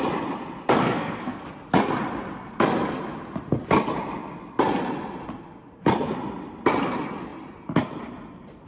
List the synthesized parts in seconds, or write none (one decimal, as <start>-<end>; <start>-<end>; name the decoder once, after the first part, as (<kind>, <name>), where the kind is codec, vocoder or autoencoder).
0.8-1.4 (codec, SNAC)